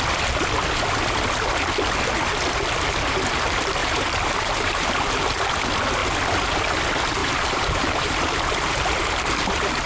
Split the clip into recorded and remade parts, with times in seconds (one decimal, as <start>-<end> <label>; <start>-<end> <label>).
0.0-3.8 recorded; 3.8-5.6 remade; 5.6-7.2 recorded; 7.2-9.5 remade; 9.5-9.9 recorded